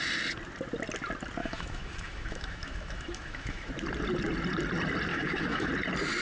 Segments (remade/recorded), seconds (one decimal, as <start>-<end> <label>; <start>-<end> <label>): 0.0-1.4 recorded; 1.4-3.7 remade; 3.7-5.1 recorded; 5.1-5.7 remade; 5.7-6.2 recorded